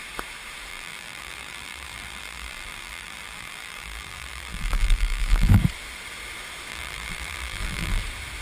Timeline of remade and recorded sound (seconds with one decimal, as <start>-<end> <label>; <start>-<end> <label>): 0.0-0.7 recorded; 0.7-5.6 remade; 5.6-6.7 recorded; 6.7-8.0 remade; 8.0-8.4 recorded